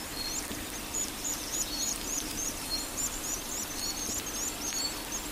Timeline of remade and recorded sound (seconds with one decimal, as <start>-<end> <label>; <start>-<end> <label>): 0.0-0.9 recorded; 0.9-4.1 remade; 4.1-5.3 recorded